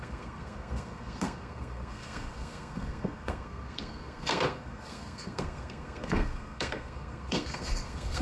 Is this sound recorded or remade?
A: remade